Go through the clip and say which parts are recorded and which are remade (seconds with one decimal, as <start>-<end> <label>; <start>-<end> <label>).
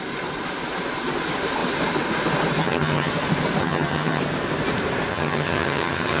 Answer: 0.0-2.6 recorded; 2.6-3.1 remade; 3.1-3.6 recorded; 3.6-4.2 remade; 4.2-5.1 recorded; 5.1-6.2 remade